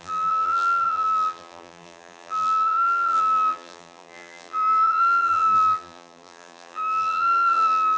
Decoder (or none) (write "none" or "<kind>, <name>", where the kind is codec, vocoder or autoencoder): vocoder, BigVGAN v2